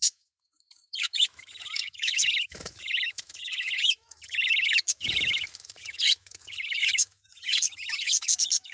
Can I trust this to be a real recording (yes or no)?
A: no